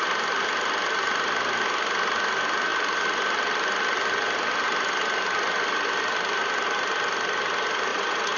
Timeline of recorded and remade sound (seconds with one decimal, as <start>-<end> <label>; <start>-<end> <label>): 0.0-7.9 recorded; 7.9-8.4 remade